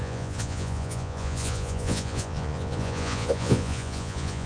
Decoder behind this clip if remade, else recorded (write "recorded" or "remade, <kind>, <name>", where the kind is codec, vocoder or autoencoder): remade, vocoder, Vocos